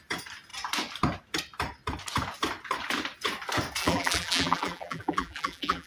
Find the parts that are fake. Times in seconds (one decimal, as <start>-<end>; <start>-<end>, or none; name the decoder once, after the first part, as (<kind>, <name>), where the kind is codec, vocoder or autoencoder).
3.8-5.9 (vocoder, BigVGAN v2)